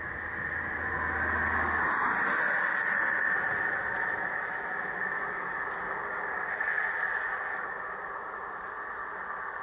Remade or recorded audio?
recorded